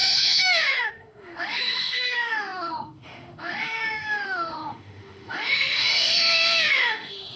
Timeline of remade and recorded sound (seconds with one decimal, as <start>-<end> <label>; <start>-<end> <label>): 0.0-7.4 remade